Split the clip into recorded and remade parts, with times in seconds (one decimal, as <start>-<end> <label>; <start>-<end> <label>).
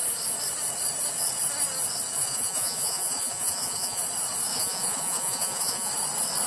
0.0-2.2 recorded; 2.2-4.0 remade; 4.0-4.5 recorded; 4.5-5.9 remade; 5.9-6.5 recorded